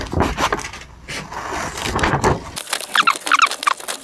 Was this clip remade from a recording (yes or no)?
no